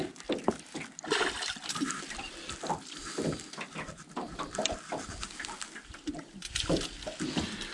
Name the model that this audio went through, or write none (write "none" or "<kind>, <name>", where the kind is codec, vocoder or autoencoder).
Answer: none